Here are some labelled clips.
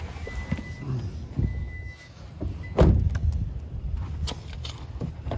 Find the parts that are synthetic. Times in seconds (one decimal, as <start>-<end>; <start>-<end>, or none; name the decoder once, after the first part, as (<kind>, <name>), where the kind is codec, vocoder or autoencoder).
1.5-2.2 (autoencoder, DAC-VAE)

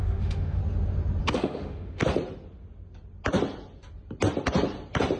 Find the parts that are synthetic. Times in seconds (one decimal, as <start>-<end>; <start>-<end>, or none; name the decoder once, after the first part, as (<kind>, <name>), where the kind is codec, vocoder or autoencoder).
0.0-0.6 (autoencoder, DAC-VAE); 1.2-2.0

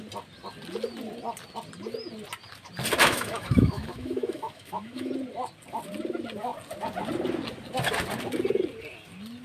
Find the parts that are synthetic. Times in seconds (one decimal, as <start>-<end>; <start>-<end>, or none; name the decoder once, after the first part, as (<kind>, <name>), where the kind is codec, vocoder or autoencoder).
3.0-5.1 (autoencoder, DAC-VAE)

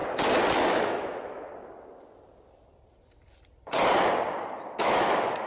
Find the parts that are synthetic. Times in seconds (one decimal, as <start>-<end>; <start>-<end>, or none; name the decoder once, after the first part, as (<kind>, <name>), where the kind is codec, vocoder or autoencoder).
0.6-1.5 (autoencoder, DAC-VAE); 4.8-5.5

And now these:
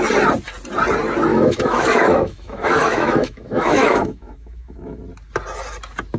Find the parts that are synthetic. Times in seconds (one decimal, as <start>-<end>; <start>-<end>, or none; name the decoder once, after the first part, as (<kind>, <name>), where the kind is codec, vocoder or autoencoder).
1.3-5.0 (autoencoder, DAC-VAE)

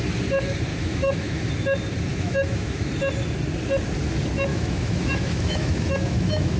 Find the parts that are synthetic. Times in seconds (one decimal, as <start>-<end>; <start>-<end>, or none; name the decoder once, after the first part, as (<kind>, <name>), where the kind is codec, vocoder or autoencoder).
0.7-1.5 (autoencoder, DAC-VAE); 2.1-2.9; 4.5-6.6